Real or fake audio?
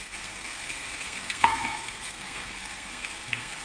fake